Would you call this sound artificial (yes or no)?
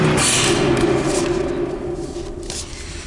no